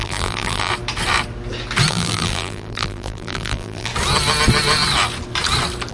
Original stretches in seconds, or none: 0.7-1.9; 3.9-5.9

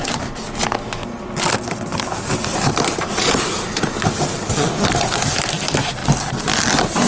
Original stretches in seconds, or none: 0.0-2.5; 5.1-7.1

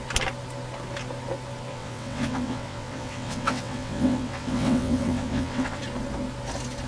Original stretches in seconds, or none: 0.0-1.7; 5.8-6.9

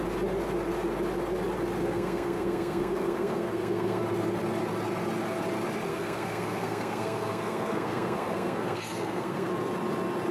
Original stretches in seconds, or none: 0.0-1.8; 4.0-5.9; 9.5-10.3